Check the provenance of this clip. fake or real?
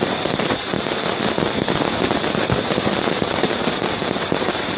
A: real